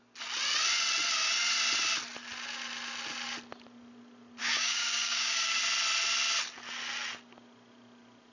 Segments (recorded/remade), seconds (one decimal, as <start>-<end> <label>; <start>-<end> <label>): 0.0-4.4 recorded; 4.4-5.6 remade; 5.6-8.3 recorded

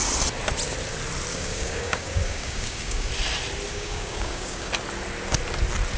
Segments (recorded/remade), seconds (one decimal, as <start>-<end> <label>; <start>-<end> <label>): 0.0-1.3 recorded; 1.3-3.1 remade; 3.1-3.7 recorded; 3.7-4.7 remade; 4.7-6.0 recorded

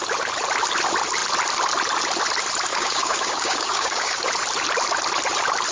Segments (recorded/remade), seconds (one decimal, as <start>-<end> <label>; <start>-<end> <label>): 0.0-2.7 recorded; 2.7-4.3 remade; 4.3-5.7 recorded

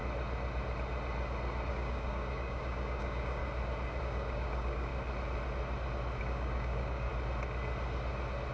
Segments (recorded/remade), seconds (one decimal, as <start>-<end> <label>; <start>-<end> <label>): 0.0-1.7 recorded; 1.7-3.4 remade; 3.4-4.0 recorded; 4.0-4.9 remade; 4.9-6.2 recorded; 6.2-7.1 remade; 7.1-8.5 recorded

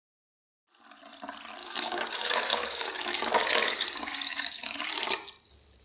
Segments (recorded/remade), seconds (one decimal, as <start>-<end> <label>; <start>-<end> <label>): 0.0-1.6 recorded; 1.6-5.0 remade; 5.0-5.8 recorded

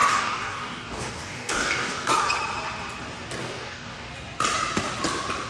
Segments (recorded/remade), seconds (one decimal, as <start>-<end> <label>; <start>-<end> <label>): 0.0-2.2 remade; 2.2-3.4 recorded; 3.4-4.1 remade; 4.1-5.5 recorded

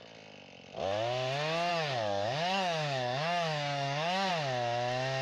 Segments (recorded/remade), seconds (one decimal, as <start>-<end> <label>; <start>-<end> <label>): 0.0-1.7 recorded; 1.7-4.3 remade; 4.3-5.2 recorded

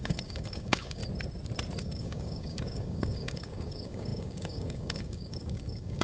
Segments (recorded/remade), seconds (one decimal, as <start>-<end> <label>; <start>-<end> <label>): 0.0-1.0 remade; 1.0-1.8 recorded; 1.8-6.0 remade